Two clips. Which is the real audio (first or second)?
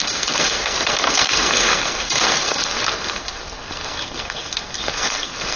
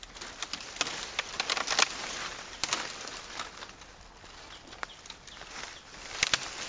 second